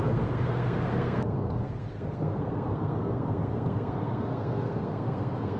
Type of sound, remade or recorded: remade